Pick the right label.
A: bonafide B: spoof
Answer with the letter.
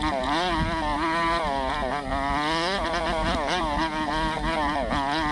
A